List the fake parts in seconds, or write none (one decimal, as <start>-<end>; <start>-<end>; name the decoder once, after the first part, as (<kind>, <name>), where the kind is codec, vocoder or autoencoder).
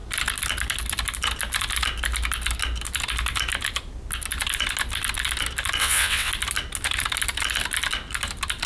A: 5.8-6.3 (vocoder, WaveNeXt)